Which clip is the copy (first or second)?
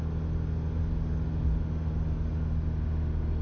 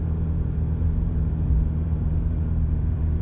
second